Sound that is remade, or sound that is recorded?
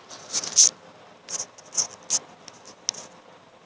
recorded